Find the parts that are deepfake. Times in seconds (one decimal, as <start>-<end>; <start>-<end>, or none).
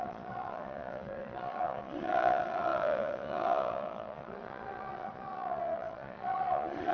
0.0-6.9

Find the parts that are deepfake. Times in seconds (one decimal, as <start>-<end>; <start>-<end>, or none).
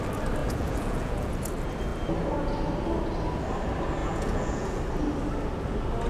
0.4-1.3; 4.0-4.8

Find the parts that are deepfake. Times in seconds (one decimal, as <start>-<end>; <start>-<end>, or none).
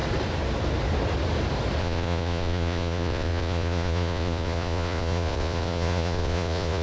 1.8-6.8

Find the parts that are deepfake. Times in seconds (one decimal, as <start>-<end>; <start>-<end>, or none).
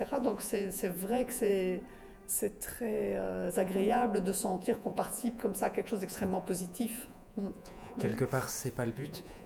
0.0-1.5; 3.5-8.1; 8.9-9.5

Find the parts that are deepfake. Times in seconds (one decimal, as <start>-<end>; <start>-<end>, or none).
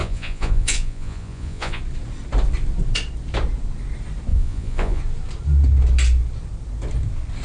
0.0-1.8; 4.3-5.0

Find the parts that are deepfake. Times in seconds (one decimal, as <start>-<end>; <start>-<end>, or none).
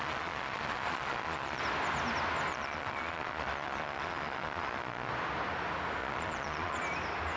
0.0-1.6; 2.5-5.1; 6.0-6.8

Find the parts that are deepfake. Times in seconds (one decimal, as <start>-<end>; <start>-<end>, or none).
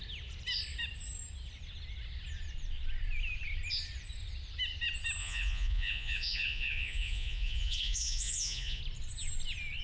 5.2-8.8